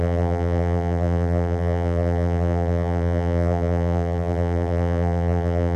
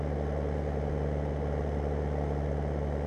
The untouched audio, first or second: second